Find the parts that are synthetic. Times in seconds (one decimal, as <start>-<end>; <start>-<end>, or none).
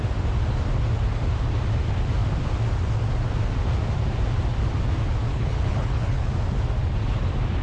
5.3-6.3